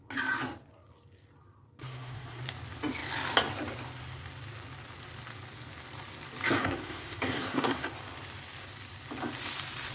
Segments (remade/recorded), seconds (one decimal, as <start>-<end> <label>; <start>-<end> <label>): 0.0-1.8 recorded; 1.8-2.4 remade; 2.4-6.6 recorded; 6.6-7.9 remade; 7.9-9.9 recorded